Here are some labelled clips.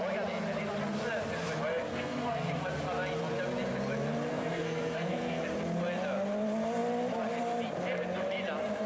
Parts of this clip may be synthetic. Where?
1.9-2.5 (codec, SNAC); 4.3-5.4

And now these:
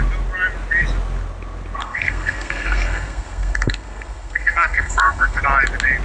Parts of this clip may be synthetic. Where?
1.8-5.4 (codec, SNAC)

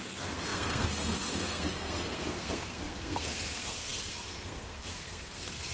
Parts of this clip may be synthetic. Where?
0.0-5.7 (codec, SNAC)

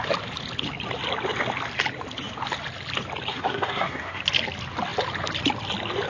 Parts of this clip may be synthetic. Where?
3.3-4.2 (codec, SNAC)

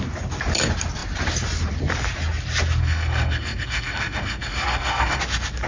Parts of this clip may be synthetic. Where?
2.8-5.2 (codec, SNAC)